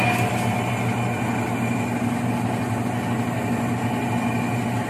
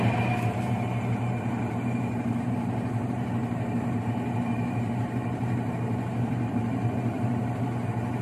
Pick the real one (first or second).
first